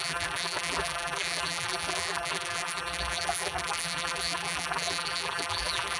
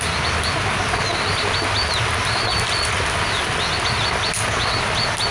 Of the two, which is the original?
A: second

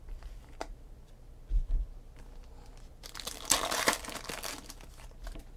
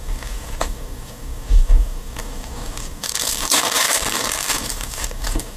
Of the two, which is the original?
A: first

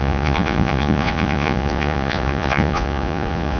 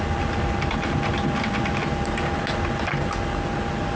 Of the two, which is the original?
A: second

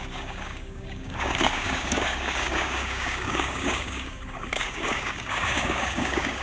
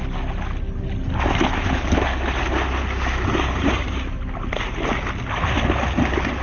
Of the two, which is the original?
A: second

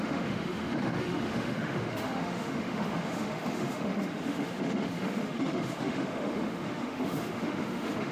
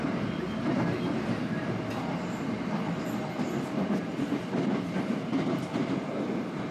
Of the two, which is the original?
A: second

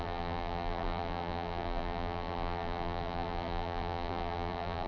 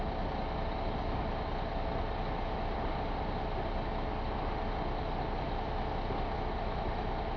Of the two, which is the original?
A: second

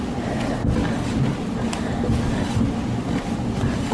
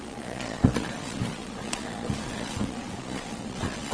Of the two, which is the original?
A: first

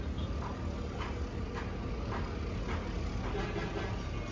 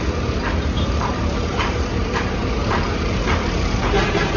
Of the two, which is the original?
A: first